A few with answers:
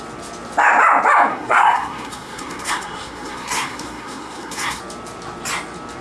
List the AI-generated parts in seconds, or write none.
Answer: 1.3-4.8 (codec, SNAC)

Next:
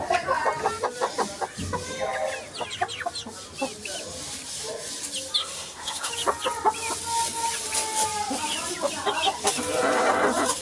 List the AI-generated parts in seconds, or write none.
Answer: 5.4-6.1 (codec, SNAC)

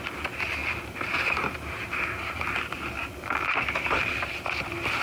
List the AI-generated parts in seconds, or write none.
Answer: none

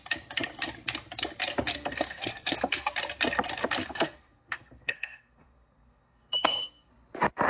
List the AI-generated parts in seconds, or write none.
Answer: 1.7-2.9 (codec, SNAC); 3.8-6.9

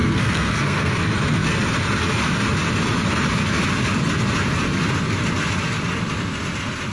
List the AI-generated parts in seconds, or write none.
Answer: 0.0-0.9 (codec, SNAC)

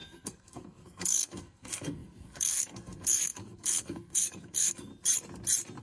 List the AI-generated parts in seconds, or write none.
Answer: 0.0-4.9 (codec, SNAC)

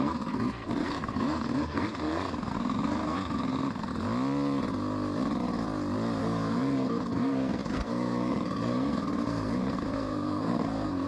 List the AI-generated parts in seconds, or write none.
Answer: 0.0-3.9 (codec, SNAC); 6.2-11.1